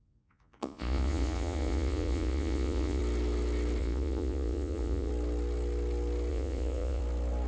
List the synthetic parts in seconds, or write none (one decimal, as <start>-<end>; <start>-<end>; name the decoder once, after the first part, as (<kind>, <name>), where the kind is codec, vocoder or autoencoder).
0.0-3.0 (vocoder, Vocos); 3.8-5.1; 6.3-7.0